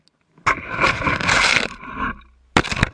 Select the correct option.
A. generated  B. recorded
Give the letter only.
B